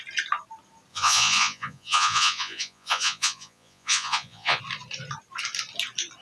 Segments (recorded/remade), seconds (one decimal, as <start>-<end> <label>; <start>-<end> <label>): 0.0-0.9 recorded; 0.9-4.6 remade; 4.6-6.2 recorded